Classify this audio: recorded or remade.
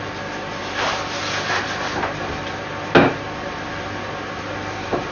recorded